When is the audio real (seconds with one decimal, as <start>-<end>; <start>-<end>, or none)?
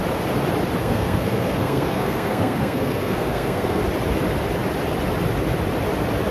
0.0-0.8; 3.8-6.3